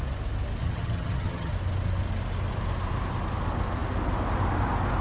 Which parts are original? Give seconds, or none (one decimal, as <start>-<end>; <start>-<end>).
0.0-0.6; 1.5-5.0